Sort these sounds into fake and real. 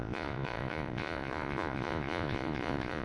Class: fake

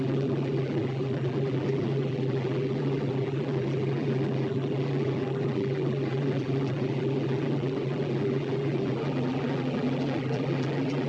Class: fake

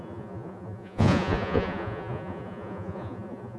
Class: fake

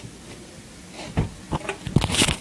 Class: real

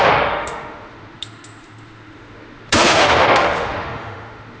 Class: fake